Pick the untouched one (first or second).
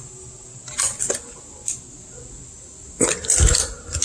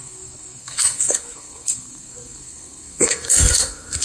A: first